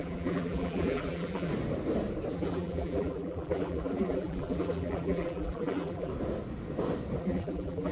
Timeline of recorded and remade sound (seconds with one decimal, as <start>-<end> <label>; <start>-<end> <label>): 0.0-1.5 remade; 1.5-2.3 recorded; 2.3-6.1 remade; 6.1-7.2 recorded; 7.2-7.9 remade